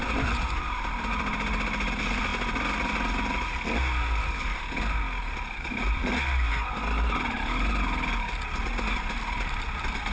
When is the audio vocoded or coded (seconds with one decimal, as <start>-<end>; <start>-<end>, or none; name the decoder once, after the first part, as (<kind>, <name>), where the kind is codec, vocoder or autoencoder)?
none